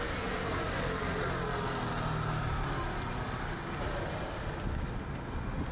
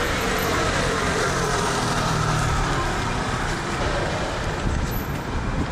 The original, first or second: first